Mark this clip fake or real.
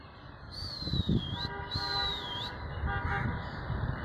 real